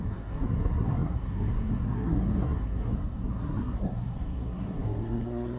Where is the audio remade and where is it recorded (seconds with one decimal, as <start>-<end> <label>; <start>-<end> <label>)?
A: 0.0-5.6 remade